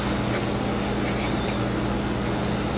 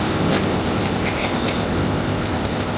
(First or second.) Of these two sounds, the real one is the first